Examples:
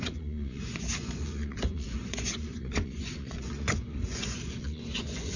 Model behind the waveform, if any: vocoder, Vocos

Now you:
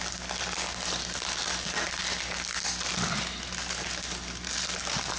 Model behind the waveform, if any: none